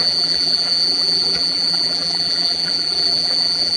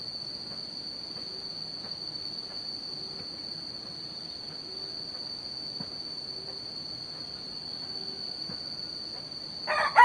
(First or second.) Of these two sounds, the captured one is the second